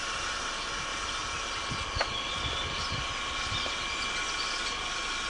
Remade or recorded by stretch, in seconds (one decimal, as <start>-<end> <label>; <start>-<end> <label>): 0.0-5.3 recorded

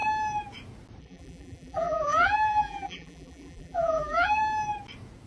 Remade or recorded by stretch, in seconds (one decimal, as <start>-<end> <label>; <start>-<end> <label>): 0.0-1.0 recorded; 1.0-4.4 remade; 4.4-5.3 recorded

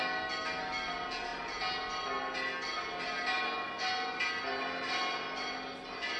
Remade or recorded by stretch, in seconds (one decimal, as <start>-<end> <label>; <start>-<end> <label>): 0.0-6.2 recorded

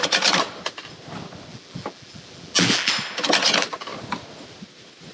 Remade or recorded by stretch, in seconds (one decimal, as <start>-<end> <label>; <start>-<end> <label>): 0.0-1.5 recorded; 1.5-2.9 remade; 2.9-5.1 recorded

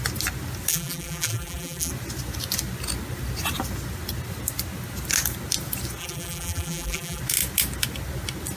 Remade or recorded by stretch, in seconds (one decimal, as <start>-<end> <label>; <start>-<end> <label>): 0.0-0.7 recorded; 0.7-1.9 remade; 1.9-6.0 recorded; 6.0-7.2 remade; 7.2-8.6 recorded